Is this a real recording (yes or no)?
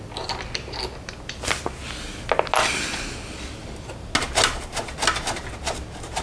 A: yes